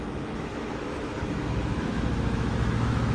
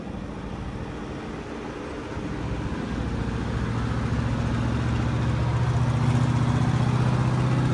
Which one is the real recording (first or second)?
second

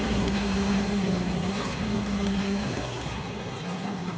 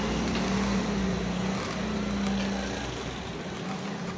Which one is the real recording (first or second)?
second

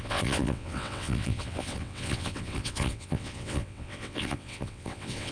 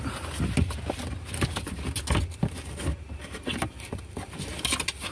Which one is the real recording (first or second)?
second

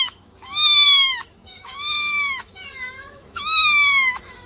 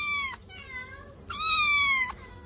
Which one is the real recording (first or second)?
second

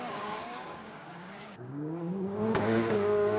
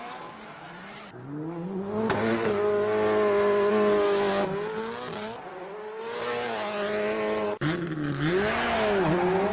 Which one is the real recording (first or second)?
second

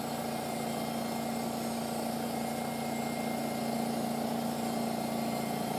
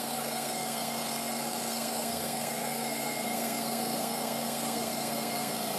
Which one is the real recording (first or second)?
first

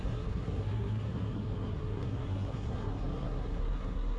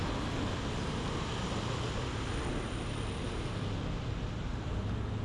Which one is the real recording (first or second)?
second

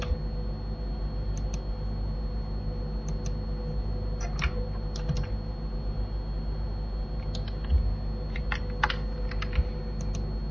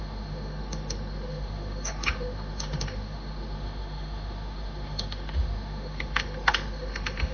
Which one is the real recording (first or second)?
first